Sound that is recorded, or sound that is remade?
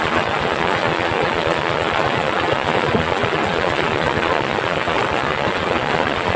remade